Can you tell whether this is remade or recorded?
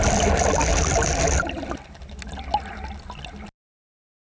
recorded